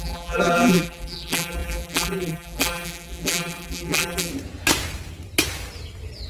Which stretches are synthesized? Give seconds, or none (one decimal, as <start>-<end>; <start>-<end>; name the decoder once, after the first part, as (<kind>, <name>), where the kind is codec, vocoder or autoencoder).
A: 0.0-4.3 (vocoder, BigVGAN v2)